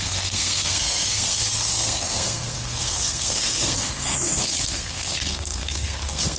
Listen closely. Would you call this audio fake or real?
fake